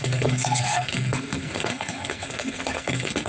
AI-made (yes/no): yes